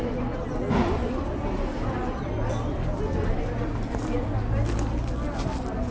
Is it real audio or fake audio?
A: real